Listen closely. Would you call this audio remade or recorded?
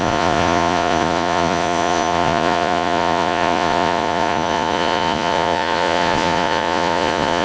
remade